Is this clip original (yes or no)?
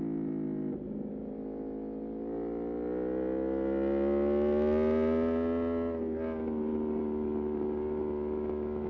yes